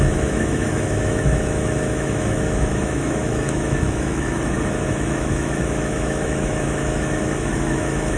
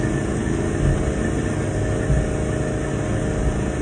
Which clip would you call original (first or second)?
second